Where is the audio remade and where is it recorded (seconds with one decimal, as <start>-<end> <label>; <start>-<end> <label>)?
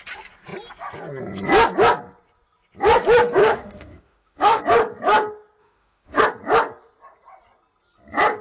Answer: 0.0-3.4 recorded; 3.4-4.6 remade; 4.6-5.6 recorded; 5.6-6.2 remade; 6.2-8.4 recorded